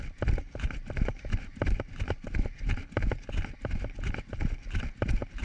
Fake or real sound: real